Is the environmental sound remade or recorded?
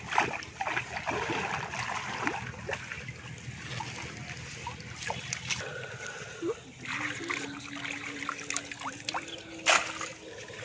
recorded